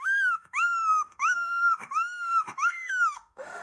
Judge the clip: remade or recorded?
remade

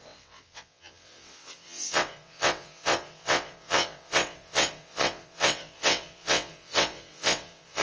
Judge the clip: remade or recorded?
remade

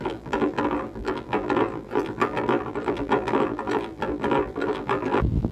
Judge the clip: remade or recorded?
remade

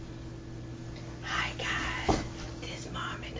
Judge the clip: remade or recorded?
recorded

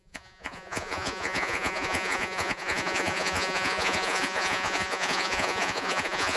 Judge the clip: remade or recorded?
remade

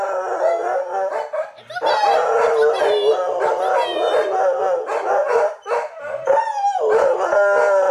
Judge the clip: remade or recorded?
recorded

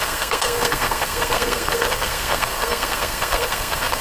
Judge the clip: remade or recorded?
remade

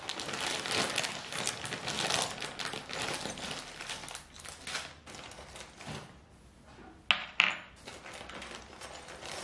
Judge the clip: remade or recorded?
recorded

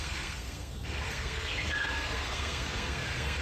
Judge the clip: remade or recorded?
remade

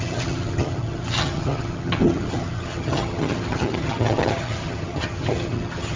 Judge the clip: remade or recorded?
remade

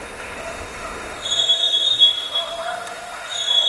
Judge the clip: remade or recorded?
remade